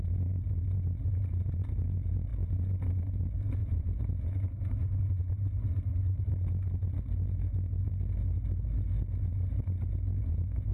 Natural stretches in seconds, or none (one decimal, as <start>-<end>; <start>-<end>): 0.0-3.6; 5.0-10.2